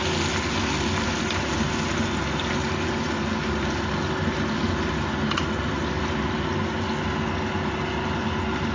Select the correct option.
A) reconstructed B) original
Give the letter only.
B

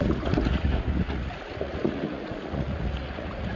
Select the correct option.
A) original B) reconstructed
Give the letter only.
B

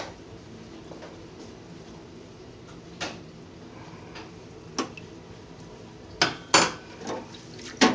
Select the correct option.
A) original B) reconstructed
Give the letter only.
A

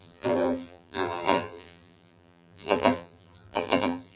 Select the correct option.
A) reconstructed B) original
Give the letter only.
A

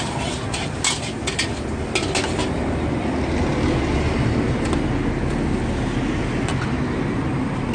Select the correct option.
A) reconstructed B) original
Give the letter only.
B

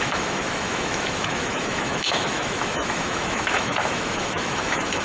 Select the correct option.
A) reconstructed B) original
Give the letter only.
A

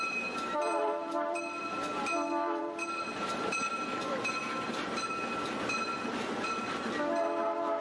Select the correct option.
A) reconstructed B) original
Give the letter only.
A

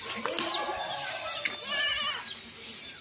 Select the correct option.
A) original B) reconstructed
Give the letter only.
A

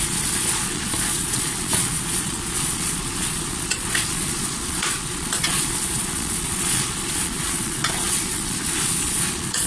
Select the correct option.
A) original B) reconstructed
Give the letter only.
B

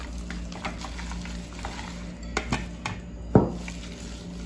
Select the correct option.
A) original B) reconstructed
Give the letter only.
A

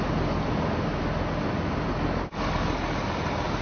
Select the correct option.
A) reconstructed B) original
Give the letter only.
B